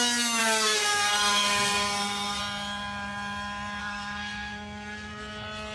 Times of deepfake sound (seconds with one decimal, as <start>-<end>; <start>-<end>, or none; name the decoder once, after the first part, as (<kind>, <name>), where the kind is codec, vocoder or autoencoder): 0.4-2.4 (codec, SNAC); 3.8-5.1